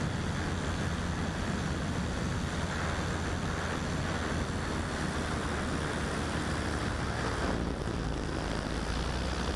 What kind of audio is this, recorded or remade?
recorded